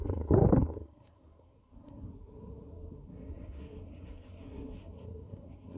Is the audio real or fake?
fake